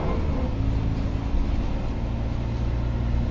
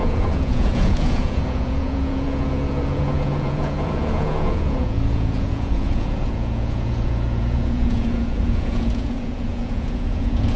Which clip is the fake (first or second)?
second